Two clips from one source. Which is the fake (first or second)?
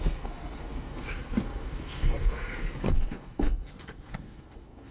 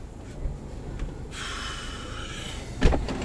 first